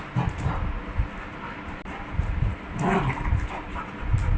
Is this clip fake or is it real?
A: real